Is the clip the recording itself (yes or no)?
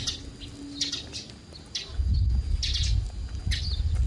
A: yes